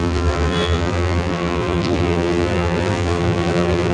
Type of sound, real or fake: fake